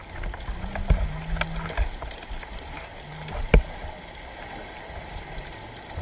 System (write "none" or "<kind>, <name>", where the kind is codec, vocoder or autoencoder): none